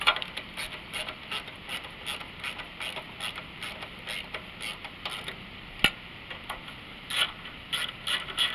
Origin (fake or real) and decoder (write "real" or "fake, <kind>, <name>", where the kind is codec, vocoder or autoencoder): real